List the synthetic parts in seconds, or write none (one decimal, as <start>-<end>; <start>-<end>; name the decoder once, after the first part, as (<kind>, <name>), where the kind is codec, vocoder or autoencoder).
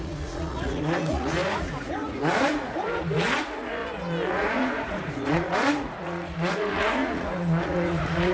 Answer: 0.0-3.8 (vocoder, Vocos); 4.3-8.3